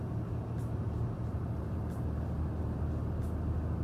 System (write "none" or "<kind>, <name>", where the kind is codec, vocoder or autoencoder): none